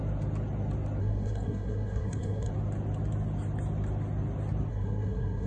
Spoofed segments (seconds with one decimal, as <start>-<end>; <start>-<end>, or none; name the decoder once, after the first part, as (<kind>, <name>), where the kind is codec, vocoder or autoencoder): 1.0-2.5 (codec, SNAC); 4.7-5.5